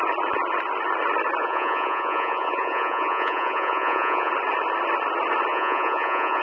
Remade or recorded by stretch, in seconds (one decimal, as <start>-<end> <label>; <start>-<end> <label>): 0.0-1.4 recorded; 1.4-4.3 remade; 4.3-5.5 recorded; 5.5-6.4 remade